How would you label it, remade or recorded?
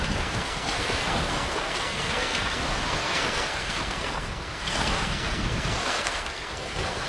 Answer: remade